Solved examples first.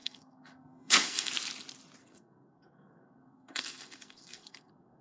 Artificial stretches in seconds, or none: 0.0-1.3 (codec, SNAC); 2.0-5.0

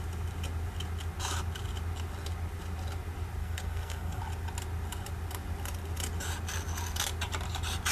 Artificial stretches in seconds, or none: 3.4-4.2 (codec, SNAC)